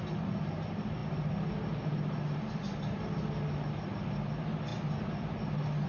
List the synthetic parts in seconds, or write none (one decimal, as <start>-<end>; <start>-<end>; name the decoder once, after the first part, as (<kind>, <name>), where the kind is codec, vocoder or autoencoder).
none